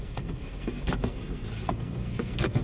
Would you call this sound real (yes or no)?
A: no